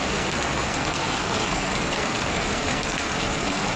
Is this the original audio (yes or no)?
no